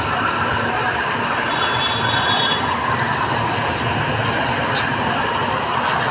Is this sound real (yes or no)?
yes